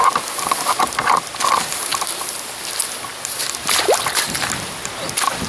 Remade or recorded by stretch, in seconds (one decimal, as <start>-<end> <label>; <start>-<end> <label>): 0.0-5.5 recorded